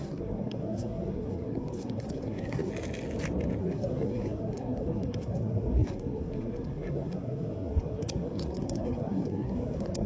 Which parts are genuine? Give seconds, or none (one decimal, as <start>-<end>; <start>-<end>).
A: 2.7-3.6